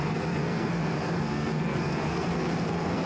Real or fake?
fake